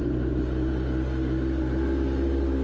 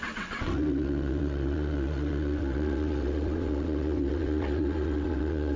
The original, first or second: first